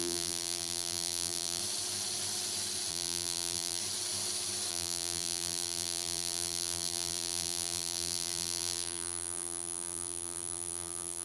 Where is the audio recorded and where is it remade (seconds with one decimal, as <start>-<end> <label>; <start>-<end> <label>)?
0.0-1.6 remade; 1.6-2.9 recorded; 2.9-3.8 remade; 3.8-4.7 recorded; 4.7-11.2 remade